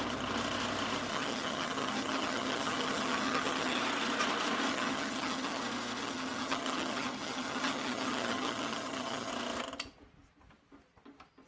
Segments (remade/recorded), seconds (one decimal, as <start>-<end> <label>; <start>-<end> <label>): 0.0-1.1 recorded; 1.1-3.8 remade; 3.8-4.7 recorded; 4.7-5.6 remade; 5.6-6.0 recorded; 6.0-9.3 remade; 9.3-11.5 recorded